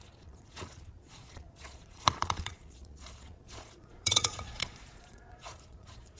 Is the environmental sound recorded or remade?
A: remade